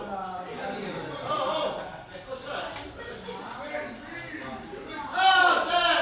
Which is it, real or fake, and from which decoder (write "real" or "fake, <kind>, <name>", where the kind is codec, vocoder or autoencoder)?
real